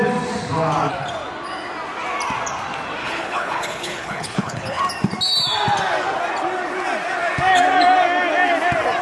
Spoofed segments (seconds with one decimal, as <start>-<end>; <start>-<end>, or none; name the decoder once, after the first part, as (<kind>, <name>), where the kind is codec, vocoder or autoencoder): 3.0-4.8 (codec, HILCodec)